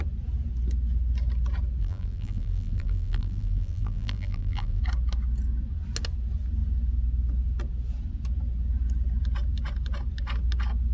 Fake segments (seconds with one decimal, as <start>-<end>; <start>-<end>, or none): 1.8-4.8